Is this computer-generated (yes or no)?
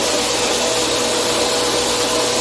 no